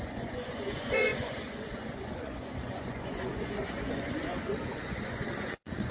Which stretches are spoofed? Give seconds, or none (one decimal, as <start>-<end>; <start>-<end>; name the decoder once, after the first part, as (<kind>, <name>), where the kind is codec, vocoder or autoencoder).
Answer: 0.0-5.9 (vocoder, Vocos)